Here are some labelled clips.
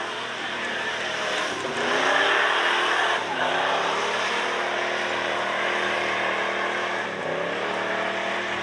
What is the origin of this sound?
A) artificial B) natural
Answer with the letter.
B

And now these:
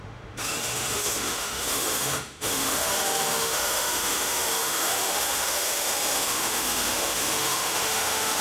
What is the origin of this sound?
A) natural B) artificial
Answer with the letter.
B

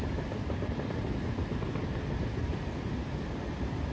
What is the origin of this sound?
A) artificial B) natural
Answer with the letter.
B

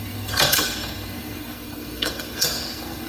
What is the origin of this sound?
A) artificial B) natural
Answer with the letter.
A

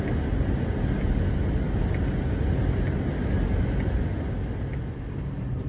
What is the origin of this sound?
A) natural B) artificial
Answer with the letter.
A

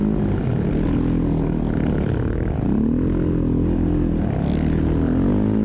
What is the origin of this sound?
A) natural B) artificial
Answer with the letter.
A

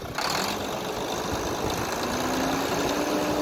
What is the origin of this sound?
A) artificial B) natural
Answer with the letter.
B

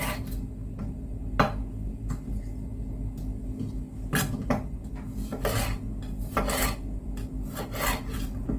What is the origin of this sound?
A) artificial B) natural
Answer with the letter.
B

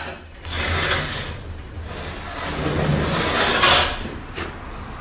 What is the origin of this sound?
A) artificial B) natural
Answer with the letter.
B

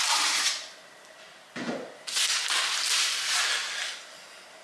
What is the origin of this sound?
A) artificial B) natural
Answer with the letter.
B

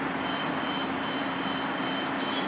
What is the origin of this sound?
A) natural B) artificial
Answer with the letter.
A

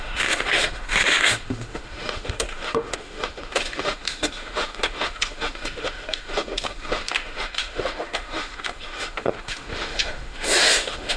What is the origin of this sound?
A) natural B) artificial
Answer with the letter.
B